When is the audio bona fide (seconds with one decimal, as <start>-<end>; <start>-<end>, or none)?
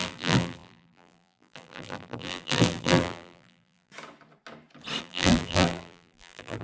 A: 3.9-5.0